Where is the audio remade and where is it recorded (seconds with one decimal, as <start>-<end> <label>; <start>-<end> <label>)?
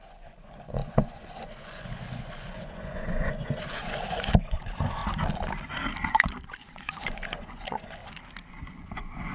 0.0-5.0 remade; 5.0-6.1 recorded; 6.1-8.0 remade; 8.0-8.5 recorded; 8.5-9.3 remade